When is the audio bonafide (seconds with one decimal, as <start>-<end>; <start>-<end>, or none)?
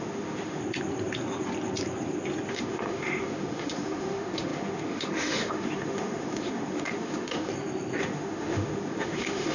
0.6-2.5; 7.5-8.0